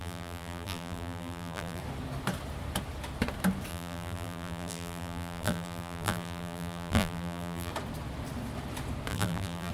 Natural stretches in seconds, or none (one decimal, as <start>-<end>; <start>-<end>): 1.8-3.7; 7.7-9.1